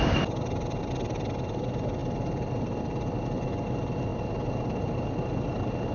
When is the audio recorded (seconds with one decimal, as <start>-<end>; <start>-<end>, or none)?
0.0-5.9